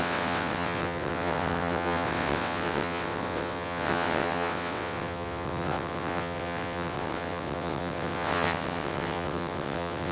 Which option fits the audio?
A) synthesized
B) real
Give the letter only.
A